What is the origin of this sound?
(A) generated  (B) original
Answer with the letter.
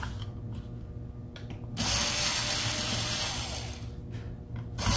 B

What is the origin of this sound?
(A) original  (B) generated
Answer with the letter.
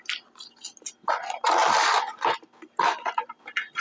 A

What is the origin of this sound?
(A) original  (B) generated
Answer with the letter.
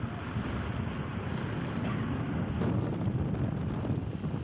A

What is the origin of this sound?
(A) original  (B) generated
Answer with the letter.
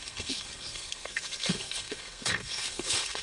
B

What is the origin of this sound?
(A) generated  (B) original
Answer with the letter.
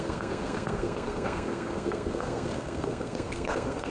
A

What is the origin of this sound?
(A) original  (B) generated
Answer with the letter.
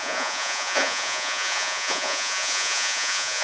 B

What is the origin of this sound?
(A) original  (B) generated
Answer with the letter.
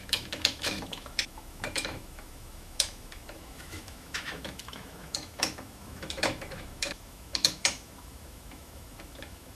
B